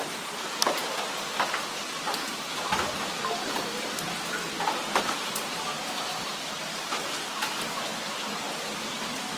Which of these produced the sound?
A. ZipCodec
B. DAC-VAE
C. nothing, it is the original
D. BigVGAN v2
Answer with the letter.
C